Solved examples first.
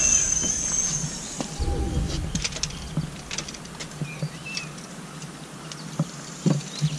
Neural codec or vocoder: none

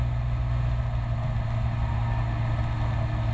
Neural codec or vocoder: none